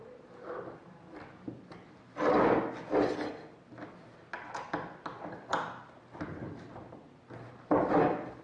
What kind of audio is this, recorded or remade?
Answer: recorded